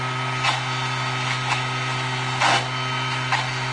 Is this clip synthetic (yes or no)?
no